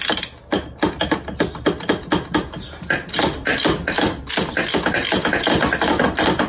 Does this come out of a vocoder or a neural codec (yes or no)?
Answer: no